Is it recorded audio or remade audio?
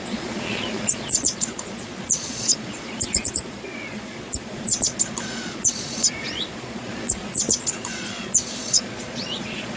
remade